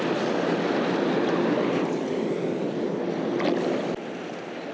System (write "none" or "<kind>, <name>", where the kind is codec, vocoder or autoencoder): none